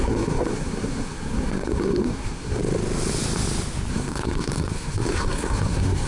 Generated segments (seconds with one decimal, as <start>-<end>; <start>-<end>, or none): 0.0-2.6; 3.9-6.1